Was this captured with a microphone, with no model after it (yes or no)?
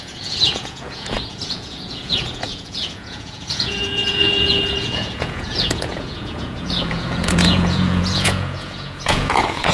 no